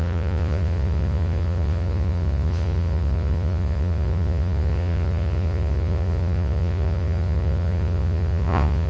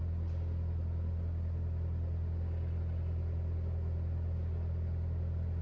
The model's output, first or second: first